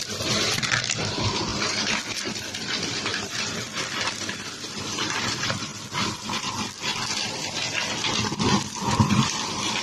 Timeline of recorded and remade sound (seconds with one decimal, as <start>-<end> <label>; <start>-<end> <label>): 0.0-5.7 remade; 5.7-6.4 recorded; 6.4-6.9 remade; 6.9-8.0 recorded; 8.0-9.8 remade